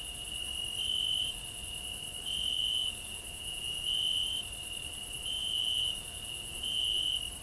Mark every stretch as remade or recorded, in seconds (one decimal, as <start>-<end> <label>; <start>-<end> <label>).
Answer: 0.0-2.6 recorded; 2.6-4.0 remade; 4.0-5.4 recorded; 5.4-7.0 remade; 7.0-7.4 recorded